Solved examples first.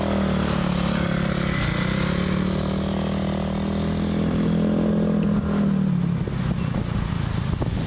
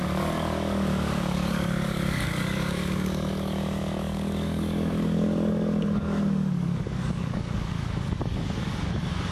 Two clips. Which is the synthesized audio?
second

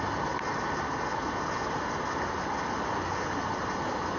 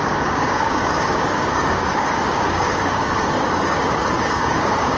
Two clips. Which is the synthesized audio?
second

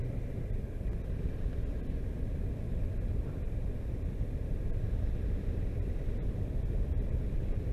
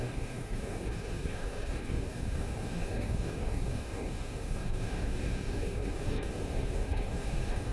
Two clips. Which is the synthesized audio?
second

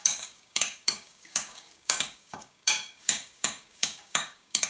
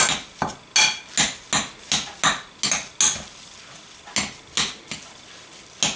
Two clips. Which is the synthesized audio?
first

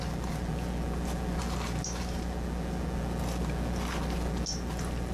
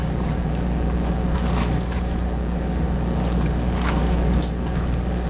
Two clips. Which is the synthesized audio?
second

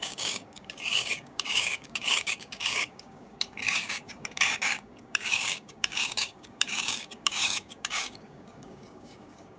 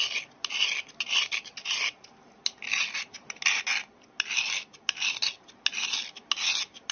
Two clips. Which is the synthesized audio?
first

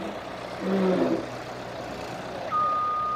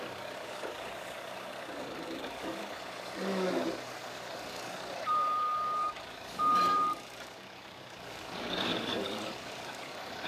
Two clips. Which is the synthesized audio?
second